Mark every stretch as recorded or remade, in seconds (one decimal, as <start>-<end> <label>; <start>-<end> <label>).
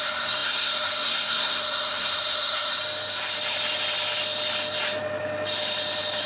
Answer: 0.0-2.8 remade; 2.8-6.3 recorded